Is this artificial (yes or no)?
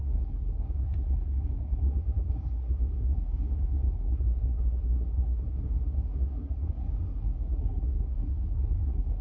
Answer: yes